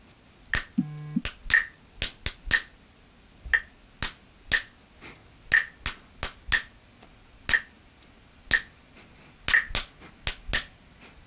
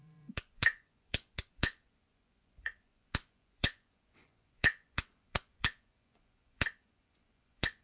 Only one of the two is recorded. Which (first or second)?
first